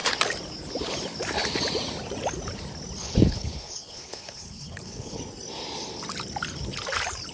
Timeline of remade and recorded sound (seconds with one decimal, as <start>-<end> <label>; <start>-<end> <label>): 0.0-3.0 recorded; 3.0-5.2 remade; 5.2-7.3 recorded